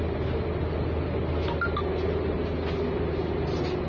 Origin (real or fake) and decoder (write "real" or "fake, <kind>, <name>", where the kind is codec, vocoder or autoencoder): real